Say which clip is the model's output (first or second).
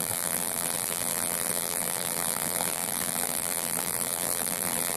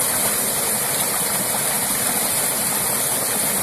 first